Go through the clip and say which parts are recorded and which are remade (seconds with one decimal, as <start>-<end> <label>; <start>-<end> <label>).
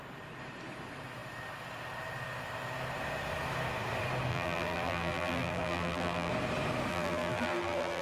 0.0-4.3 recorded; 4.3-6.3 remade; 6.3-6.9 recorded; 6.9-8.0 remade